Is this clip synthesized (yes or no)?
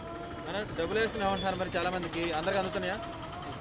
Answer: no